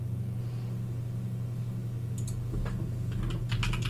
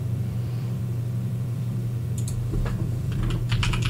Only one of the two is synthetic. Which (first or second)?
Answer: second